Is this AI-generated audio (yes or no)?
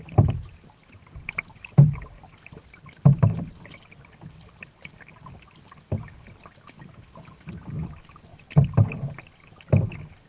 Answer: no